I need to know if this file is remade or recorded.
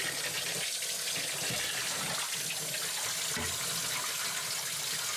recorded